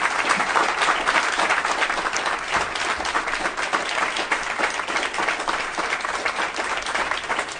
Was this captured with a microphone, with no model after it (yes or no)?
yes